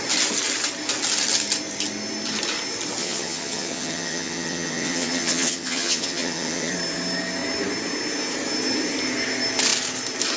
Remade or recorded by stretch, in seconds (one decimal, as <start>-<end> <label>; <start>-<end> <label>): 0.0-3.0 recorded; 3.0-6.7 remade; 6.7-10.4 recorded

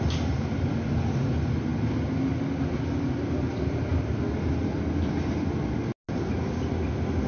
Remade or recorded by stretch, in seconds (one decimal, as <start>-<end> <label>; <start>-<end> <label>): 0.0-7.3 recorded

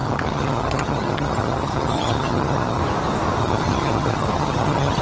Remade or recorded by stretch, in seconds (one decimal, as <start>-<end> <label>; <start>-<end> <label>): 0.0-2.8 remade; 2.8-3.4 recorded; 3.4-5.0 remade

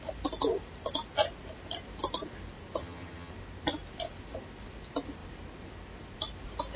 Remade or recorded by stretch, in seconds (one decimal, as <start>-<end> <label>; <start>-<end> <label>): 0.0-2.8 recorded; 2.8-3.3 remade; 3.3-6.8 recorded

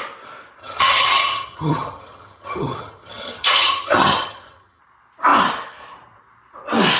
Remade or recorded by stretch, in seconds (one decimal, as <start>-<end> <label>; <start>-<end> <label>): 0.0-0.6 recorded; 0.6-4.8 remade; 4.8-7.0 recorded

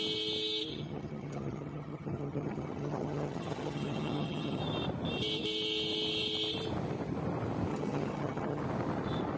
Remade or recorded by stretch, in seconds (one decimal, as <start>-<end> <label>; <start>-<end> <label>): 0.0-0.7 recorded; 0.7-4.6 remade; 4.6-7.7 recorded; 7.7-8.6 remade; 8.6-9.4 recorded

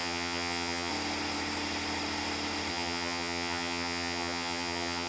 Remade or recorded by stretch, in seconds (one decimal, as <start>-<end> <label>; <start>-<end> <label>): 0.0-0.9 remade; 0.9-2.7 recorded; 2.7-5.1 remade